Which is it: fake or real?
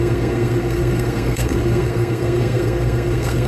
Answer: fake